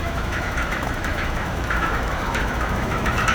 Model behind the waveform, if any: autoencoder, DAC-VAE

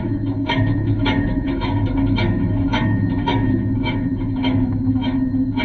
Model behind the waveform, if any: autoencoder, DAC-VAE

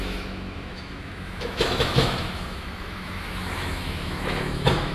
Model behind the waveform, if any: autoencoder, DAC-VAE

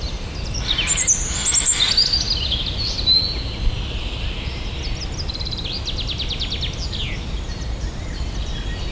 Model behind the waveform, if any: none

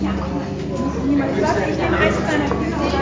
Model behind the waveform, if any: none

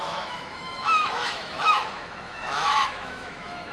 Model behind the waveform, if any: autoencoder, DAC-VAE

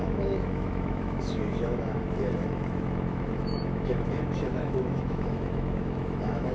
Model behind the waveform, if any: autoencoder, DAC-VAE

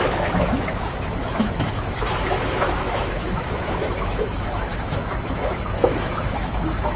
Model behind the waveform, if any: autoencoder, DAC-VAE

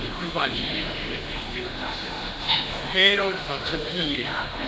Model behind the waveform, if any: autoencoder, DAC-VAE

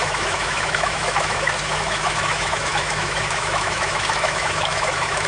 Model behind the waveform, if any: autoencoder, DAC-VAE